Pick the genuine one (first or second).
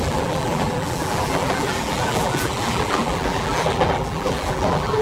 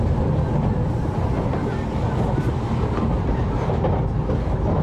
second